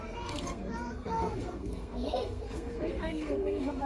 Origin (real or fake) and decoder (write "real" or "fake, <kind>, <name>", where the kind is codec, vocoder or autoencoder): fake, codec, SNAC